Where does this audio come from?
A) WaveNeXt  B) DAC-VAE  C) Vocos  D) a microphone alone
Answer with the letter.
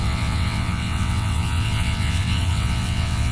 A